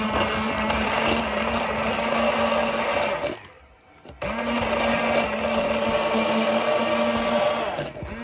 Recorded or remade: recorded